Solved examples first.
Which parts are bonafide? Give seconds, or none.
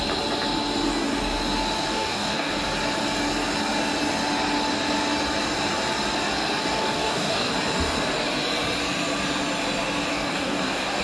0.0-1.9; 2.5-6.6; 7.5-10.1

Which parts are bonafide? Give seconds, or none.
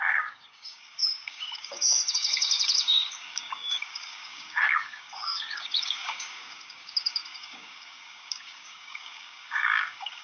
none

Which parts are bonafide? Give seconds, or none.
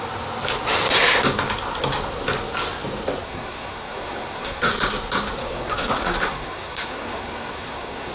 0.0-3.2; 4.7-5.4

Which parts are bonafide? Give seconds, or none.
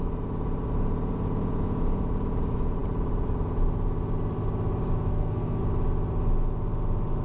0.0-5.1; 5.6-7.2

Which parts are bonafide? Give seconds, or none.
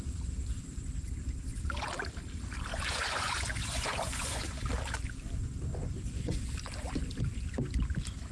0.0-2.7; 4.6-5.7; 6.5-8.3